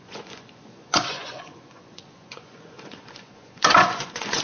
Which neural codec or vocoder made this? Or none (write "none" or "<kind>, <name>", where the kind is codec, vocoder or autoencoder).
vocoder, Vocos